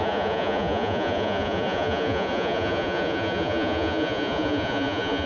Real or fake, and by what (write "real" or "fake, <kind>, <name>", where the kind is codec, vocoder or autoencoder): fake, vocoder, Vocos